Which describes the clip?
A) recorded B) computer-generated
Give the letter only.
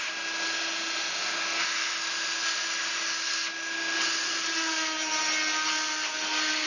A